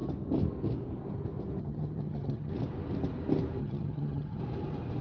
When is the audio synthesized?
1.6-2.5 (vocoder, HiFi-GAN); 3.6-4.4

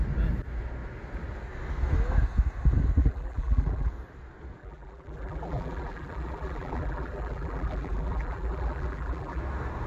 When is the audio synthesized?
3.0-3.9 (vocoder, BigVGAN v2); 4.6-9.4

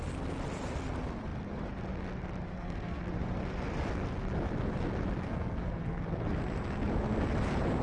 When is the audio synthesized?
2.5-3.0 (codec, SNAC); 5.2-6.0

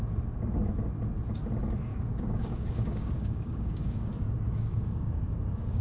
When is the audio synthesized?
1.9-5.8 (codec, DAC)

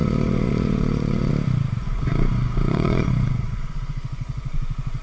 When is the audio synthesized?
0.0-1.3 (vocoder, Vocos); 1.8-5.0